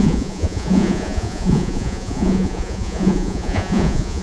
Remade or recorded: remade